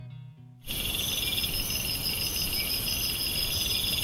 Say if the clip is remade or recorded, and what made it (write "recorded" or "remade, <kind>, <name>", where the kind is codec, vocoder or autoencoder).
recorded